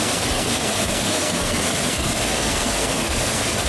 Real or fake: fake